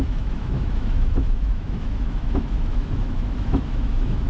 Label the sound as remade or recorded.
remade